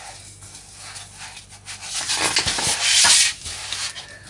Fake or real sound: real